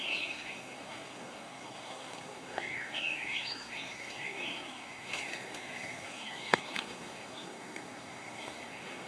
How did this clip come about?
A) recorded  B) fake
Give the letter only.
B